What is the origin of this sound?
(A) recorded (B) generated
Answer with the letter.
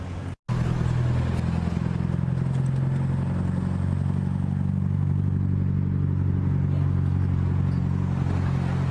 A